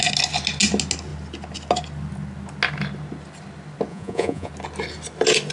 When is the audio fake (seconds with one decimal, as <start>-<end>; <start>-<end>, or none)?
3.9-4.5